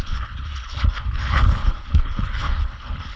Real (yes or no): no